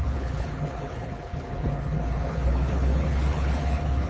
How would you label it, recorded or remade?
remade